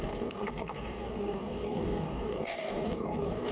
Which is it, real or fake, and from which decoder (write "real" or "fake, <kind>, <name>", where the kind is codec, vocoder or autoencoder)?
fake, codec, DAC